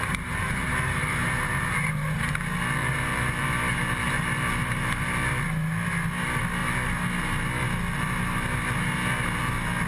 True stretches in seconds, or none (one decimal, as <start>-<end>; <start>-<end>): 1.6-2.8; 3.3-9.9